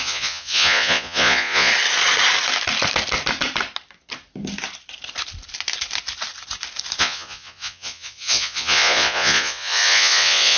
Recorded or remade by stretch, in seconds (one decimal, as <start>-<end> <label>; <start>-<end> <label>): 0.0-1.7 remade; 1.7-7.0 recorded; 7.0-10.6 remade